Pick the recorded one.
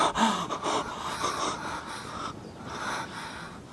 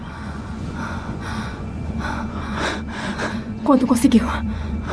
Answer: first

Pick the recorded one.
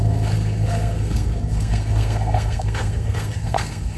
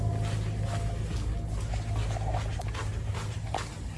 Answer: second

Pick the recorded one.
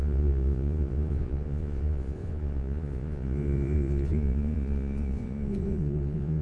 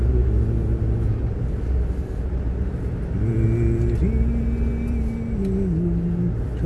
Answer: second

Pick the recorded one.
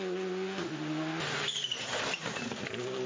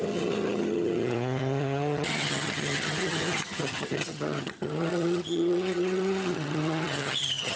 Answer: first